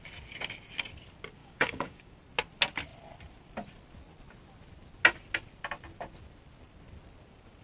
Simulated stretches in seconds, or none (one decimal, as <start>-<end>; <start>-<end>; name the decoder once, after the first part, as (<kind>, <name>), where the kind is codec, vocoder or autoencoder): 1.4-2.2 (codec, DAC)